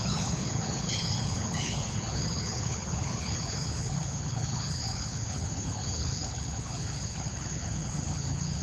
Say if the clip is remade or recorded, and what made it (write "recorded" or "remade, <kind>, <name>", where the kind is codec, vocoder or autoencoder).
remade, codec, HILCodec